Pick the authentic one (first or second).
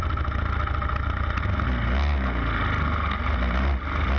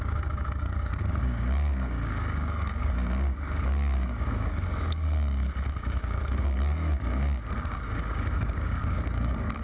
first